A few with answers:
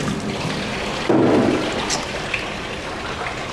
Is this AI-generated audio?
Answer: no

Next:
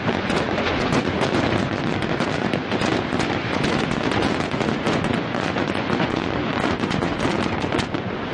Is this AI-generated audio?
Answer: yes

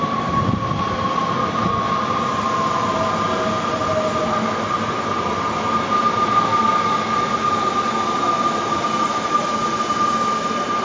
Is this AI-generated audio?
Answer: no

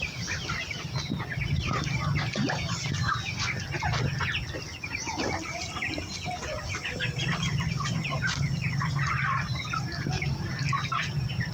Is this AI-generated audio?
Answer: no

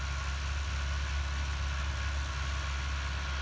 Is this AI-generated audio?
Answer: no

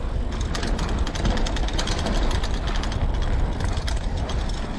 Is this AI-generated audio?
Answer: no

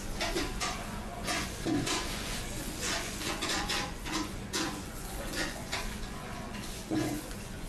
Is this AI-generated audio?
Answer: yes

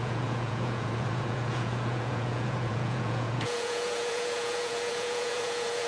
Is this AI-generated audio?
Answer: yes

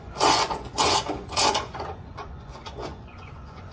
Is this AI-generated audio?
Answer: yes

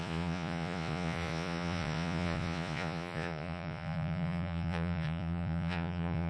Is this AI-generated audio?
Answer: yes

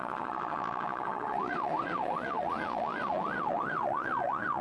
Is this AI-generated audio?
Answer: yes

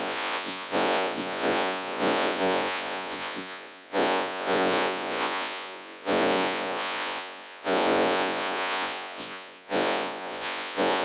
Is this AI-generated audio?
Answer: yes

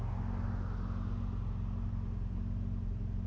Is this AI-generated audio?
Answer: no